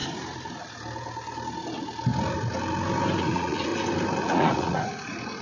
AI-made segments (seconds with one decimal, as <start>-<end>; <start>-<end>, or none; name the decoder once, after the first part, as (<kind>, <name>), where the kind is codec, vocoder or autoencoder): 3.2-3.7 (vocoder, Vocos); 4.2-5.4